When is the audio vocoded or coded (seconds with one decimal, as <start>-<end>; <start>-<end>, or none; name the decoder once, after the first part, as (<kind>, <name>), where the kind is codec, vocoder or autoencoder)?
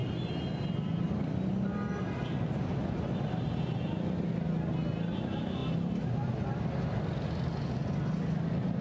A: none